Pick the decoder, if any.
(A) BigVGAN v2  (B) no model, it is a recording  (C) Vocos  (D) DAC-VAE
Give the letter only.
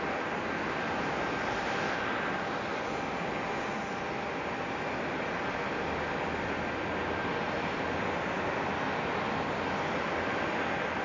B